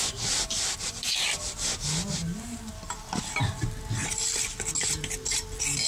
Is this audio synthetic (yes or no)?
no